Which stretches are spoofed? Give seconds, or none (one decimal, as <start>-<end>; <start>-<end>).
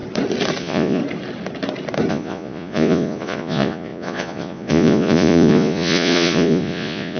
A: 0.6-1.0; 2.1-7.2